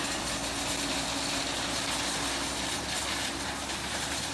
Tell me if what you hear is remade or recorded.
recorded